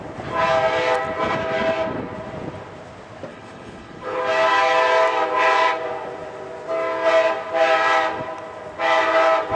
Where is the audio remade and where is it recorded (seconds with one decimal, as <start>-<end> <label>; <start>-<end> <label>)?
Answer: 0.0-3.3 recorded; 3.3-4.2 remade; 4.2-9.6 recorded